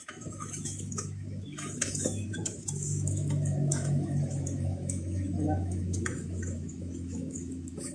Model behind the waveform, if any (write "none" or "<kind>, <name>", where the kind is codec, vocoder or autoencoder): autoencoder, DAC-VAE